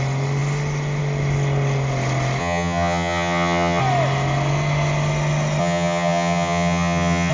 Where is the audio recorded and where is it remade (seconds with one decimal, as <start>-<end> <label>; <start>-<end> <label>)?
0.0-2.4 recorded; 2.4-3.8 remade; 3.8-5.6 recorded; 5.6-7.3 remade